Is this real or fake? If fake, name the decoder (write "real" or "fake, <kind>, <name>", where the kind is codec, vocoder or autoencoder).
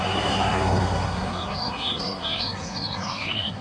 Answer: fake, codec, SNAC